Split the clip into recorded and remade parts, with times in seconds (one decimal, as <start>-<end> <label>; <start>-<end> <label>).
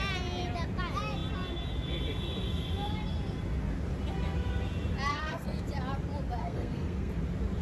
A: 0.0-5.1 recorded; 5.1-5.6 remade; 5.6-6.4 recorded; 6.4-7.1 remade; 7.1-7.6 recorded